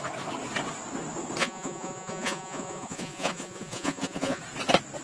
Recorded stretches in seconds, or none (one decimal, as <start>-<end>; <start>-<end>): 0.0-1.4; 4.4-5.0